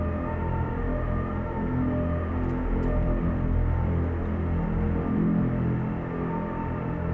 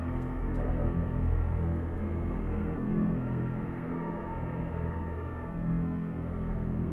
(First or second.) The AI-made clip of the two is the second